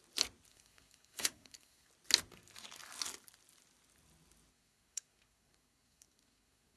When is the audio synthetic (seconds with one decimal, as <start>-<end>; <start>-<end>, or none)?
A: 0.5-1.9; 4.5-6.8